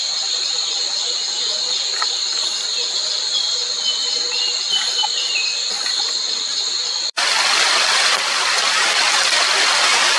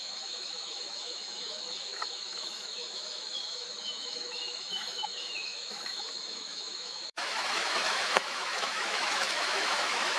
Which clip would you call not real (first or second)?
second